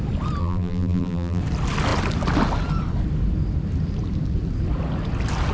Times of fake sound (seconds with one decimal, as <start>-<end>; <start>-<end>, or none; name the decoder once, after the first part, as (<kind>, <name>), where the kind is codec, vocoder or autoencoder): 0.4-1.4 (vocoder, BigVGAN v2)